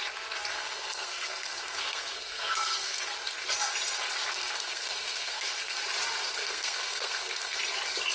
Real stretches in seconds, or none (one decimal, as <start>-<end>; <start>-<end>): 0.0-0.5; 3.0-4.3; 5.8-6.4; 7.6-8.1